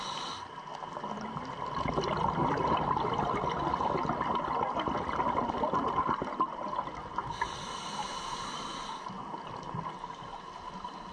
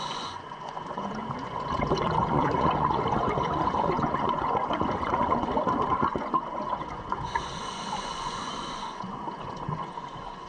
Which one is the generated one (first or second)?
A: second